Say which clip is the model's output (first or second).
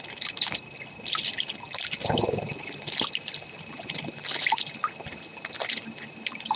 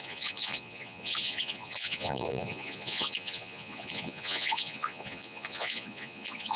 second